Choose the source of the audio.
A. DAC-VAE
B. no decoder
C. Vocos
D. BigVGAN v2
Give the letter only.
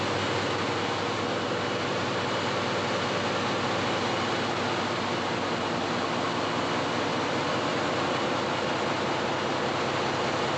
B